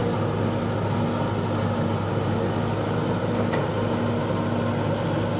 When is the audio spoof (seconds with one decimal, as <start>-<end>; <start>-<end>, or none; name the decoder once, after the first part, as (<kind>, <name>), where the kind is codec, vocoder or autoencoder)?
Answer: none